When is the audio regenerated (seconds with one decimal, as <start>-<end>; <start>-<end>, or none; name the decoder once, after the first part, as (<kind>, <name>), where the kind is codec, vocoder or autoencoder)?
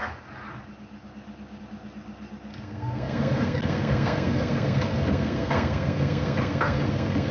2.5-7.3 (codec, SNAC)